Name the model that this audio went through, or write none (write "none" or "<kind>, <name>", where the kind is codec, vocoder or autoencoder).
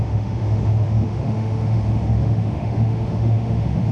autoencoder, DAC-VAE